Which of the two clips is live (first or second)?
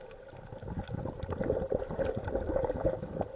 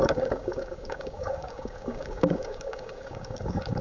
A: first